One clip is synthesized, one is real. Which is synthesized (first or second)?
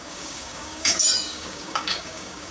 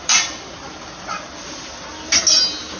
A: first